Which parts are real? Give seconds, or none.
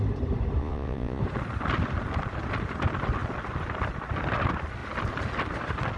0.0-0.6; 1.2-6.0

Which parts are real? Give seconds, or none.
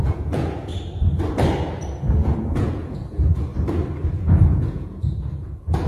0.7-2.0; 3.5-4.1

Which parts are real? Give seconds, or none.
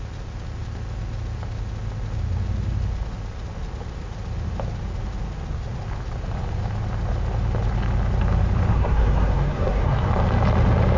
0.0-8.7; 10.1-11.0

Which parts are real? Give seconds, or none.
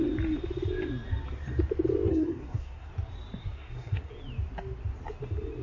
0.0-2.1; 2.9-3.4; 4.1-5.6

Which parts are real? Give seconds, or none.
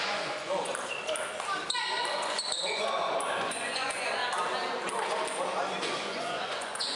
0.7-2.1; 4.2-5.8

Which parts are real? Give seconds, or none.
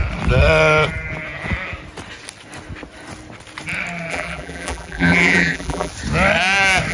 0.0-4.1; 5.9-6.9